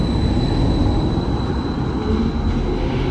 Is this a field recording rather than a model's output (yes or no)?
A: yes